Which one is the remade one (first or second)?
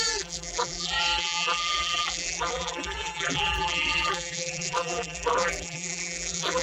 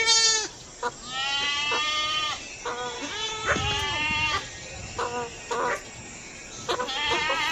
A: first